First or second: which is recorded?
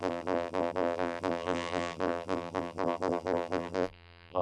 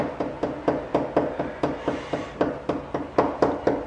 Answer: second